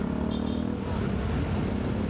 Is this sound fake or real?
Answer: real